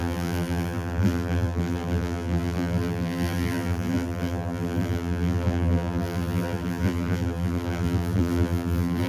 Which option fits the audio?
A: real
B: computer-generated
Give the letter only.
B